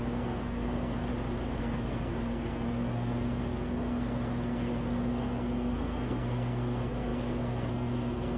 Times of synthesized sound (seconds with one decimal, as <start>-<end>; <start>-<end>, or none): 0.0-1.1; 1.6-8.4